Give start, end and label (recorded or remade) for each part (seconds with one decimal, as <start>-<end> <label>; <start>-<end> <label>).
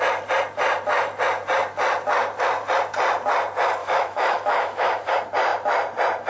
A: 0.0-3.8 recorded; 3.8-5.1 remade; 5.1-6.3 recorded